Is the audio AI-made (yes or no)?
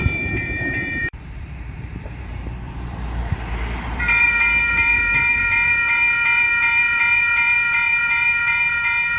yes